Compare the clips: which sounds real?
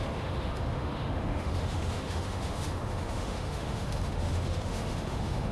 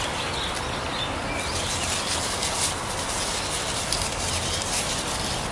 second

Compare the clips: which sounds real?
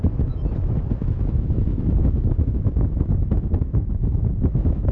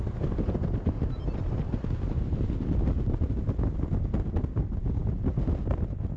second